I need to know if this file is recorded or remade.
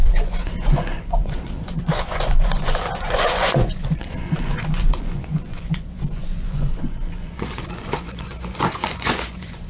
remade